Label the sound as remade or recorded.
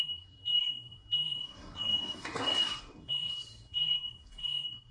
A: remade